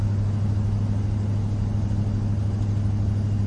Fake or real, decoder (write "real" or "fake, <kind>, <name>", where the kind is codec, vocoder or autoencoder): real